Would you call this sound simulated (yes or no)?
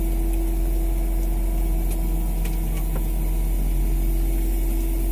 no